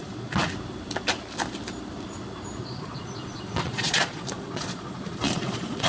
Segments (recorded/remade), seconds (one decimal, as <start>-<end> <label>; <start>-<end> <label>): 0.0-0.4 remade; 0.4-2.6 recorded; 2.6-5.9 remade